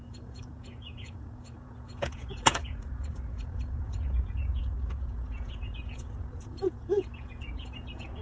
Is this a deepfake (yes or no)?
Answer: yes